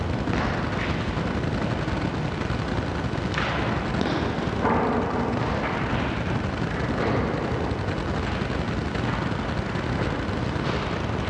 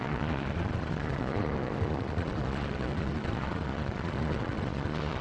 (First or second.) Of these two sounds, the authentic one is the first